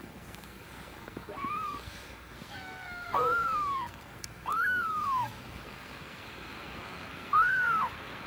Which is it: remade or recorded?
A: remade